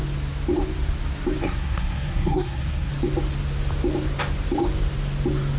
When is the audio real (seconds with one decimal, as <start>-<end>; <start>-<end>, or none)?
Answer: 0.0-1.4; 2.9-5.6